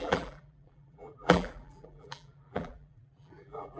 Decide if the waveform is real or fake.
fake